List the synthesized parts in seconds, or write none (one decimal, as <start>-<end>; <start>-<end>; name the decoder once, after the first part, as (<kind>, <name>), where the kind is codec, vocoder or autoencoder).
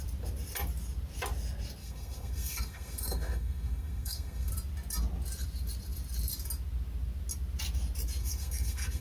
1.8-4.5 (codec, SNAC); 8.2-9.0